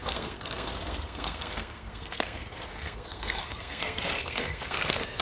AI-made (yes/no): yes